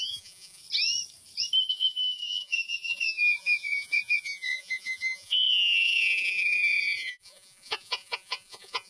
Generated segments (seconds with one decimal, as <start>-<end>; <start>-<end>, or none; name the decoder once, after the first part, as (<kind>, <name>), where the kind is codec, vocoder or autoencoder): 0.0-0.6 (vocoder, Vocos); 1.7-8.9